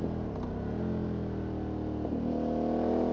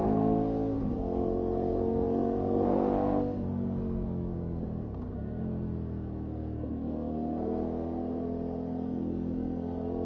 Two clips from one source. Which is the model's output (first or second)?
second